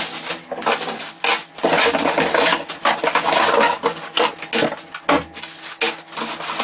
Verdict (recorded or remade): recorded